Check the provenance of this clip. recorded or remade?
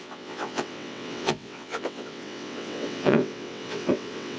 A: remade